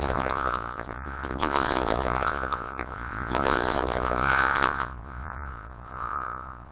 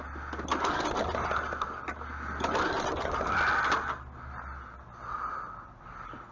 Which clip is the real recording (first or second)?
second